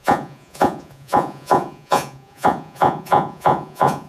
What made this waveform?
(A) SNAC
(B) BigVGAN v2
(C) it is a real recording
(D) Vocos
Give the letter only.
D